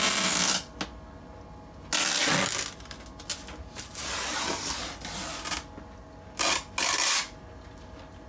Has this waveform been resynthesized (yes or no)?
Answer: no